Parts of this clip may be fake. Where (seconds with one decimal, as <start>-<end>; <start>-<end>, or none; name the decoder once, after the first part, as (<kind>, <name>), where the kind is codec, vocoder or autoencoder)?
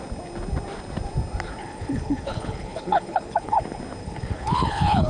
1.6-3.6 (codec, HILCodec); 4.0-5.1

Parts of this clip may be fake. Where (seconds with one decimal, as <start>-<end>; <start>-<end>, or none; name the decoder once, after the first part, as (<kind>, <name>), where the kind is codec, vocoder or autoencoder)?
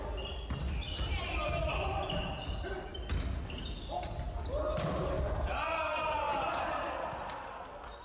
none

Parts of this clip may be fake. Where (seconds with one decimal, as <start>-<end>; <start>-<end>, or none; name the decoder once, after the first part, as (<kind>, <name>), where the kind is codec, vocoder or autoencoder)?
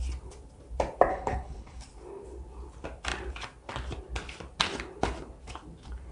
1.1-1.9 (codec, HILCodec)